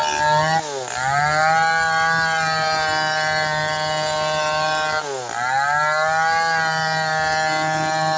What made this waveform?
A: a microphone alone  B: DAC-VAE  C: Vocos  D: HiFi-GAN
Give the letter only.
A